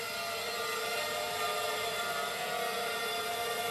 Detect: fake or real real